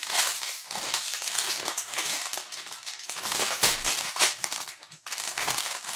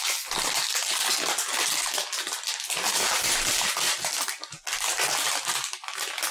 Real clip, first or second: second